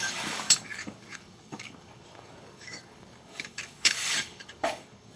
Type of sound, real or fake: fake